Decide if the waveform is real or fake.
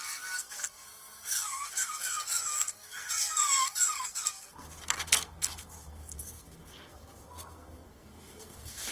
fake